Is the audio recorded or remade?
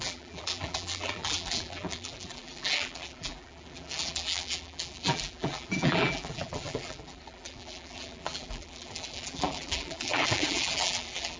remade